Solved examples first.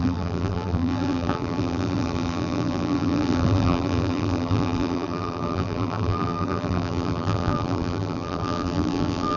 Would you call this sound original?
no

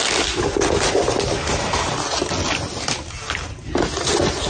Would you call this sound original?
yes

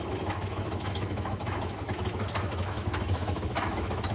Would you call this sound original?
no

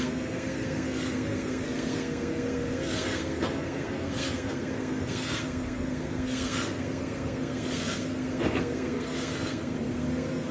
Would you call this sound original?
no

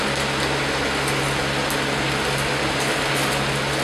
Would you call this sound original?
yes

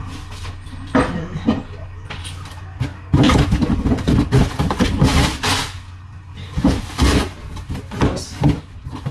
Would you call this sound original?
yes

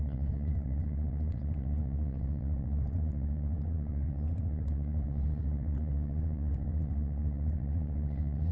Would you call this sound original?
no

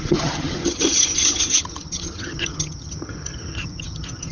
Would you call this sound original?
no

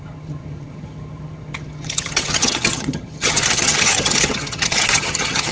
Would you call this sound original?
no